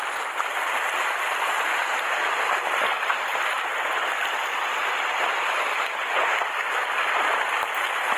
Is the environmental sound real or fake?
real